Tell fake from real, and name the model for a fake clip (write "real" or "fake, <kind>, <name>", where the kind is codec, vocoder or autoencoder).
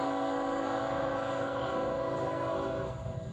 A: fake, codec, SNAC